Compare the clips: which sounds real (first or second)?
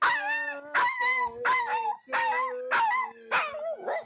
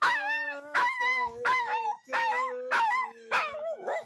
first